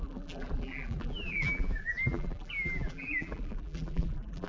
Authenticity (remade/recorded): remade